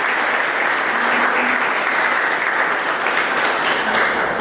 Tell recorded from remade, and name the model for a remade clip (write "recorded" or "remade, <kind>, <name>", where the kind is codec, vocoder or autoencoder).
recorded